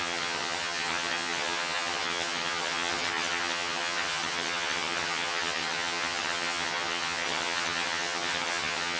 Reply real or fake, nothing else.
fake